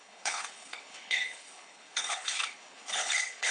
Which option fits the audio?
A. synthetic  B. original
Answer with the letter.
A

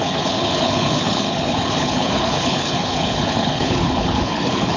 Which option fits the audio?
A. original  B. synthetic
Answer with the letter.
B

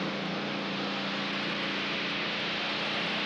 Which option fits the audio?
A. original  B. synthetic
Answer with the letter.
A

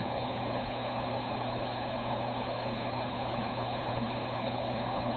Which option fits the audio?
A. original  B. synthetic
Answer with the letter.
B